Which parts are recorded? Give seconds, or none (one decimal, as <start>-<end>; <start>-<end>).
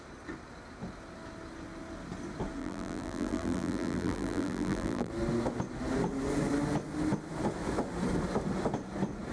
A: 0.0-2.6; 5.1-9.3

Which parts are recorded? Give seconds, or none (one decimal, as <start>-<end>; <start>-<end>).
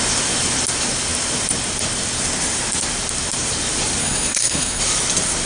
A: 0.0-4.0; 4.8-5.5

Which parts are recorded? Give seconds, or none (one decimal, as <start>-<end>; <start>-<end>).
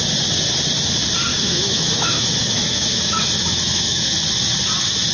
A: 0.0-1.3; 4.2-5.1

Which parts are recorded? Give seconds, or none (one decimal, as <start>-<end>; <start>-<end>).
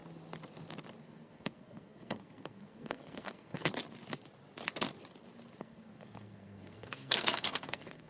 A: 0.0-1.0; 3.7-5.6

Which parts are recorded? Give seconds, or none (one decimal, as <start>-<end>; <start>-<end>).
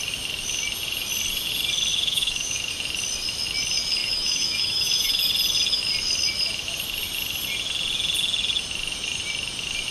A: 0.0-1.9; 2.7-4.0; 5.2-9.9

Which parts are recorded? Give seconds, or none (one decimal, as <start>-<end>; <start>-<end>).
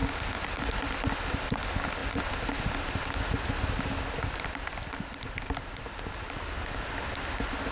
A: 0.0-7.7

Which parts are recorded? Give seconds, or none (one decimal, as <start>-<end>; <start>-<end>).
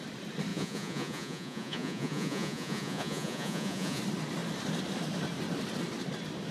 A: 0.0-0.5; 4.0-6.5